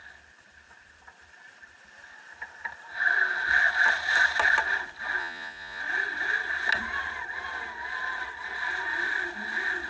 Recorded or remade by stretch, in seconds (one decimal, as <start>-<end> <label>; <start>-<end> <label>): 0.0-5.2 recorded; 5.2-5.8 remade; 5.8-9.9 recorded